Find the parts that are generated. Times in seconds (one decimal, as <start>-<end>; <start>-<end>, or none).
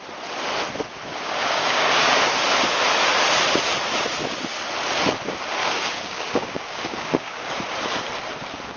1.1-2.3; 5.6-7.5